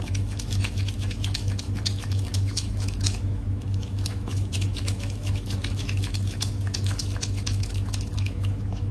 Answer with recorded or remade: remade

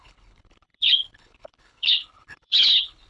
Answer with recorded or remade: remade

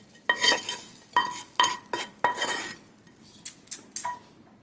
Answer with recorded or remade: recorded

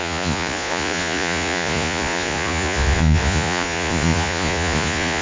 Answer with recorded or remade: remade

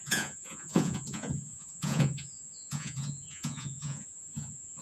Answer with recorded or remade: remade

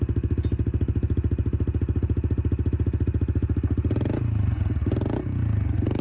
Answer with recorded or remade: recorded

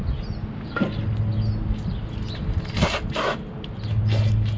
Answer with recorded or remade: recorded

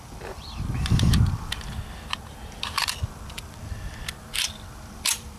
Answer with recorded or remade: remade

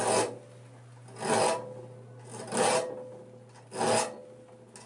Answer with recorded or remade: recorded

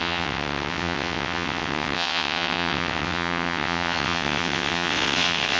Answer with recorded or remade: remade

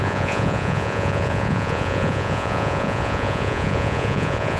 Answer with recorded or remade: remade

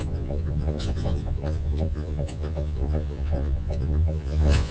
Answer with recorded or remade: remade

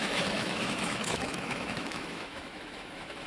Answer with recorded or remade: remade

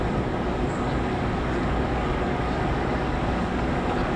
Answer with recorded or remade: remade